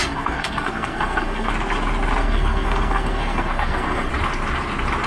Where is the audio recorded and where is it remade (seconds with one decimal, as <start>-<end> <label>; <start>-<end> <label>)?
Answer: 0.0-1.5 remade; 1.5-2.2 recorded; 2.2-4.1 remade; 4.1-5.1 recorded